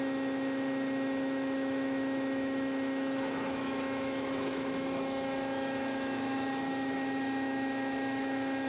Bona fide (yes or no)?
no